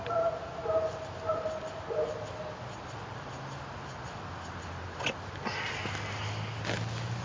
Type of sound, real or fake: real